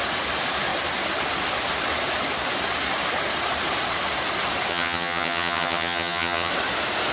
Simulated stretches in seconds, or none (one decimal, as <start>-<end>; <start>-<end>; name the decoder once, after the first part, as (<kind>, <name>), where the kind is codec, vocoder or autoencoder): 4.7-6.5 (vocoder, HiFi-GAN)